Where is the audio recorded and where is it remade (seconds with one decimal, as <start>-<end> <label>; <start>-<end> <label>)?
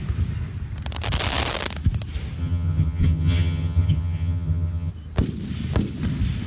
0.0-2.4 recorded; 2.4-4.9 remade; 4.9-6.5 recorded